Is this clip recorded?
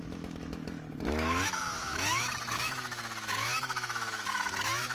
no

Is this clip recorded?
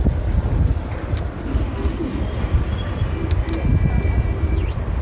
yes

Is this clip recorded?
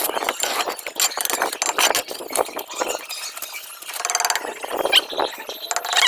yes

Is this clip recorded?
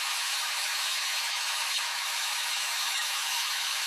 no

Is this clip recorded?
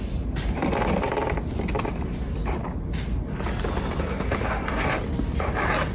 yes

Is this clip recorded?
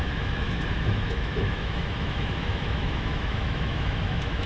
no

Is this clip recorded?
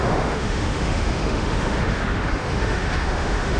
no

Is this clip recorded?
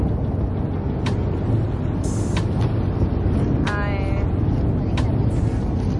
yes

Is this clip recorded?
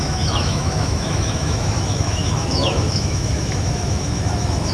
no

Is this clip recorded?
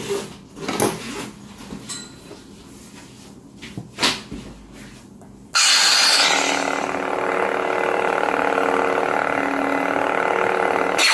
yes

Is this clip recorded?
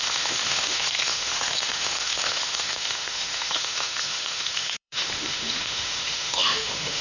no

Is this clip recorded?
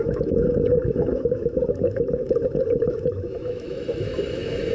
no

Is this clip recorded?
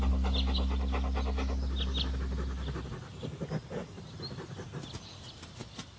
yes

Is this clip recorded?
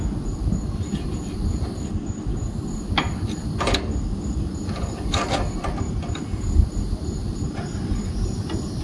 yes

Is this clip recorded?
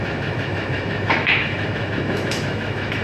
no